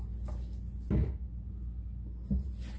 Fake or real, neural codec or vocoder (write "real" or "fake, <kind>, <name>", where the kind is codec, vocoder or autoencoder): real